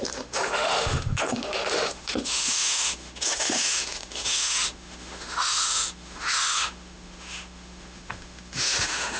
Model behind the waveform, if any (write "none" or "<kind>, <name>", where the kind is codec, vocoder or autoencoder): autoencoder, DAC-VAE